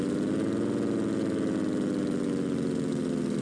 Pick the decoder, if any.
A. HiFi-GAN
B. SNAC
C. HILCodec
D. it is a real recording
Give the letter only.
D